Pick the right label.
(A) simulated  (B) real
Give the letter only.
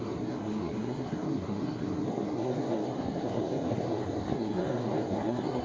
A